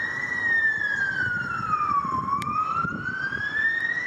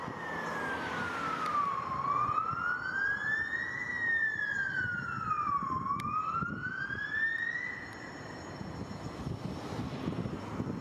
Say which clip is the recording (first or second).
second